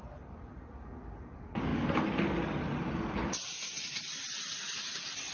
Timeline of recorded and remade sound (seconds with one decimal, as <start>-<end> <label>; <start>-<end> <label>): 0.0-5.3 recorded